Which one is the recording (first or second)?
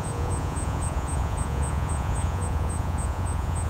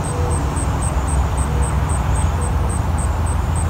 second